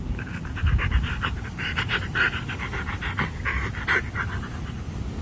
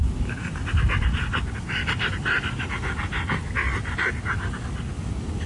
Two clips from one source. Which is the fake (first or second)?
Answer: first